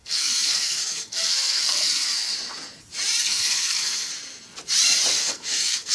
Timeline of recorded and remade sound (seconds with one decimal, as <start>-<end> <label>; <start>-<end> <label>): 0.0-2.3 remade; 2.3-3.2 recorded; 3.2-4.1 remade; 4.1-5.2 recorded; 5.2-5.9 remade